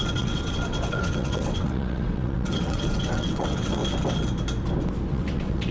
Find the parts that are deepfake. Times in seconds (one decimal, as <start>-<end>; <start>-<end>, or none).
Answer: 0.0-3.8; 5.1-5.7